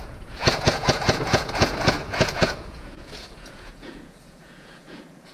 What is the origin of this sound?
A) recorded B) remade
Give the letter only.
B